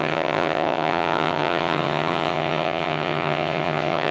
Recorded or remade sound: remade